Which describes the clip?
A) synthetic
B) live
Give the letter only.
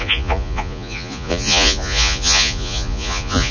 A